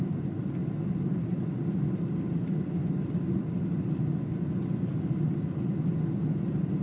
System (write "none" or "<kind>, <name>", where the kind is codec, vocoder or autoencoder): none